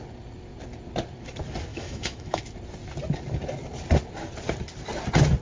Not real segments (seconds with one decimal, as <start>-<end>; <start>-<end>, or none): 1.7-2.4